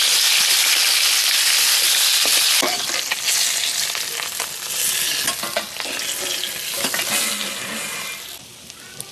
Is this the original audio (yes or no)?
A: yes